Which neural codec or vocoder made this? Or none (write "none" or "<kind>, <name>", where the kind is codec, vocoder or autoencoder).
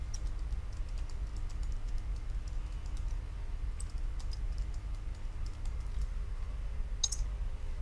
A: none